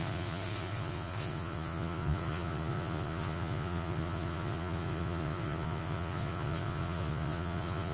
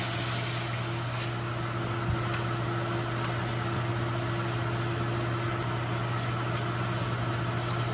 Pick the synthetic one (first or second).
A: first